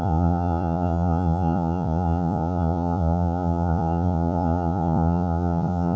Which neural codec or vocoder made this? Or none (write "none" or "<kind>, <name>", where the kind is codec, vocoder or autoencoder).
vocoder, Vocos